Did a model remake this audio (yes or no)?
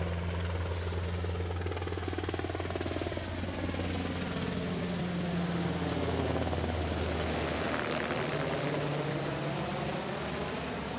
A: no